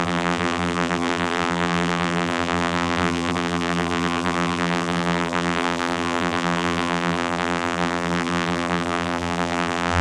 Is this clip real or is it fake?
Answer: fake